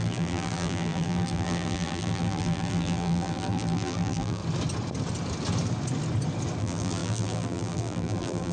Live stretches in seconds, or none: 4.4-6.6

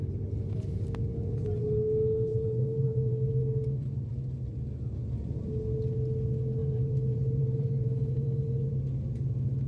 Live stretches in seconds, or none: 0.0-2.3; 4.0-6.6; 8.7-9.7

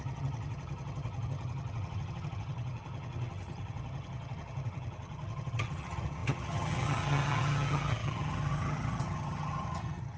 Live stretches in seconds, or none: none

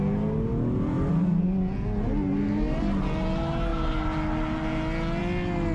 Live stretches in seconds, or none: 0.0-5.7

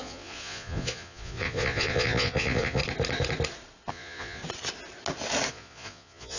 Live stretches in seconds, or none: 2.8-3.9; 4.4-5.5